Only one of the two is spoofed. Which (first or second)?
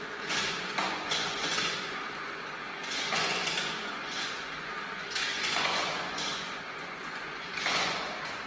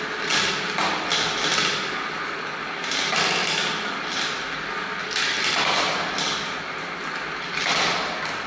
first